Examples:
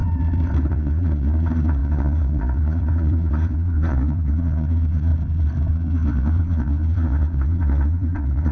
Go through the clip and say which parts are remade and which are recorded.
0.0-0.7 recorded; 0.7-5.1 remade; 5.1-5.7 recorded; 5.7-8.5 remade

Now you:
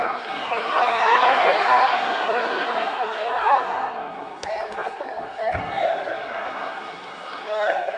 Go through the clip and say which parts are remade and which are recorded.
0.0-8.0 remade

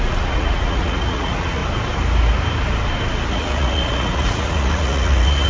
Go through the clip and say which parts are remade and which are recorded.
0.0-1.6 remade; 1.6-3.3 recorded; 3.3-5.5 remade

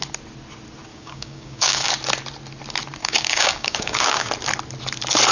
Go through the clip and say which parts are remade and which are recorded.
0.0-0.9 recorded; 0.9-1.9 remade; 1.9-3.0 recorded; 3.0-4.3 remade; 4.3-5.3 recorded

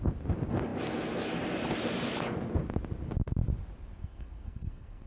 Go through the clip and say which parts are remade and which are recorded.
0.0-4.0 recorded; 4.0-5.1 remade

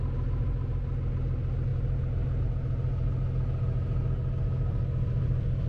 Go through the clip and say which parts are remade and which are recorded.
0.0-5.7 recorded

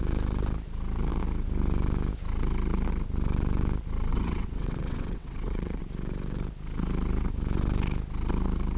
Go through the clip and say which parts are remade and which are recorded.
0.0-4.1 recorded; 4.1-5.8 remade; 5.8-8.8 recorded

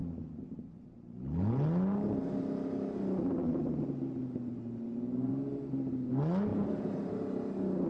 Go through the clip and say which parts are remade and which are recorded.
0.0-6.5 recorded; 6.5-7.5 remade; 7.5-7.9 recorded